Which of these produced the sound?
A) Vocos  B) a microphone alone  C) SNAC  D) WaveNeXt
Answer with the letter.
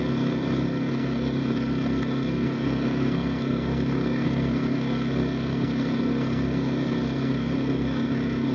C